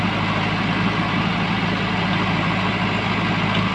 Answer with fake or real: real